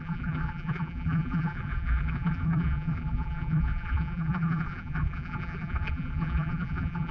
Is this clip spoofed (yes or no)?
yes